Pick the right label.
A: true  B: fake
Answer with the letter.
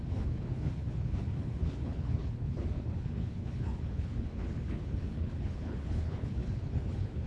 B